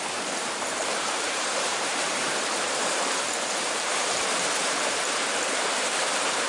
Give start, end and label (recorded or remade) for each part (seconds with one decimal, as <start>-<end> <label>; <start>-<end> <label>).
0.0-6.5 remade

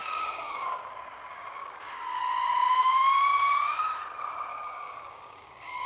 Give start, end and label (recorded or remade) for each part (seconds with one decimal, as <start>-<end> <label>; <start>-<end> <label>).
0.0-2.2 remade; 2.2-2.8 recorded; 2.8-3.8 remade; 3.8-4.5 recorded; 4.5-5.9 remade

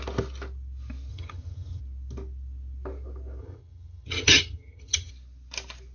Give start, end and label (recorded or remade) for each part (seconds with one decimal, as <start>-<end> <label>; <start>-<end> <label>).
0.0-1.1 recorded; 1.1-1.8 remade; 1.8-3.4 recorded; 3.4-5.1 remade; 5.1-5.9 recorded

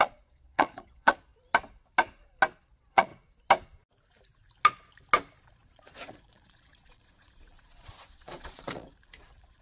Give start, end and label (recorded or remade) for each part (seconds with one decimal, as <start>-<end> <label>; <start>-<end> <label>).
0.0-1.3 remade; 1.3-2.6 recorded; 2.6-3.1 remade; 3.1-5.5 recorded; 5.5-9.6 remade